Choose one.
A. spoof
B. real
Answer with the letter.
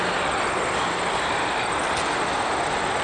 B